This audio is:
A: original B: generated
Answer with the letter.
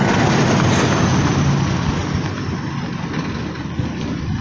A